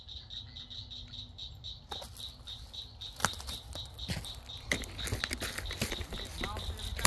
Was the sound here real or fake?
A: real